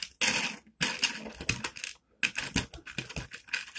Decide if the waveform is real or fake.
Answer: real